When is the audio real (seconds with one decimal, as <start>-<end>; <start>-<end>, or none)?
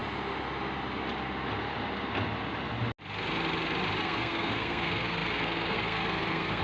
0.0-4.0